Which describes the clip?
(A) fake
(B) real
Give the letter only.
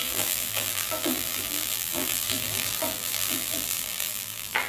A